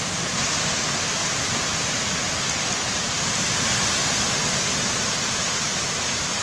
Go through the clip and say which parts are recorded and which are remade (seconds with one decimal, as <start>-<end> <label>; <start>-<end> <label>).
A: 0.0-4.0 remade; 4.0-5.2 recorded; 5.2-6.4 remade